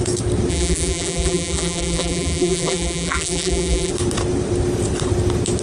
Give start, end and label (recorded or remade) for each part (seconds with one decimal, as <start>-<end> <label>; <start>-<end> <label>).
0.0-0.5 recorded; 0.5-3.9 remade; 3.9-5.6 recorded